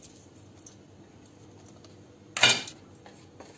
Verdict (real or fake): real